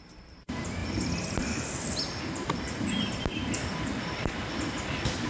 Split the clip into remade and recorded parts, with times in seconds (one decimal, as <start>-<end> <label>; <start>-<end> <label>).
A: 0.0-0.8 remade; 0.8-2.0 recorded; 2.0-4.2 remade; 4.2-5.3 recorded